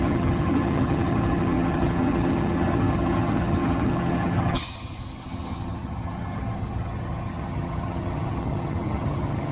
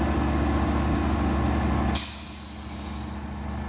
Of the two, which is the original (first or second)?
second